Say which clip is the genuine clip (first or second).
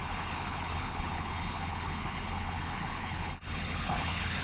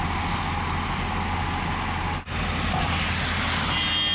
second